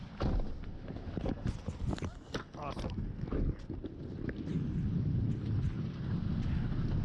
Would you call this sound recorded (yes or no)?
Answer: yes